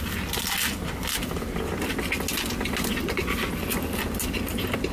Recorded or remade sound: recorded